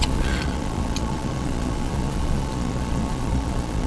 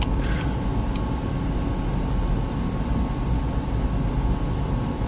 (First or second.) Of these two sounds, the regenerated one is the first